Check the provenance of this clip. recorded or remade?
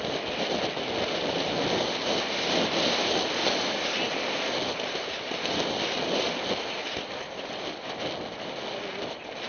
recorded